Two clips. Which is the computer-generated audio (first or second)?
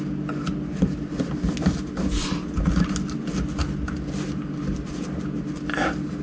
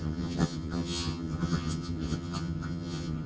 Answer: second